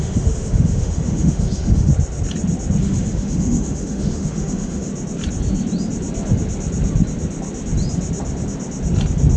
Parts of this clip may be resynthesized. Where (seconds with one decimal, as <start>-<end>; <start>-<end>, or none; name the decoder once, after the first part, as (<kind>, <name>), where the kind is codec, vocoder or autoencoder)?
0.0-1.9 (autoencoder, DAC-VAE); 2.8-4.9